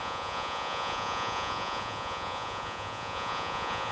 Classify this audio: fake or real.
fake